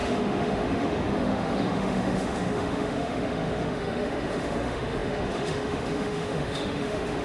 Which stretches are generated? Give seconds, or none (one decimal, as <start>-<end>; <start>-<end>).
0.0-7.2